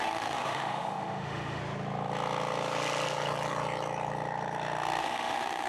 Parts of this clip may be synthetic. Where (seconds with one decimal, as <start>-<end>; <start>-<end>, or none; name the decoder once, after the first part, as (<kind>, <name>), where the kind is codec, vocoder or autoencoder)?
0.0-1.6 (autoencoder, DAC-VAE); 5.0-5.7